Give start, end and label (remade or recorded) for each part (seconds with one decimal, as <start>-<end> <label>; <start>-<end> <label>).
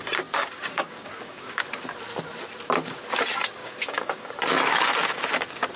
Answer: 0.0-0.4 recorded; 0.4-1.6 remade; 1.6-3.6 recorded; 3.6-4.3 remade; 4.3-5.8 recorded